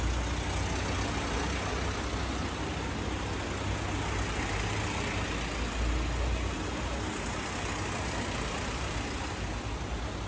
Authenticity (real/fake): real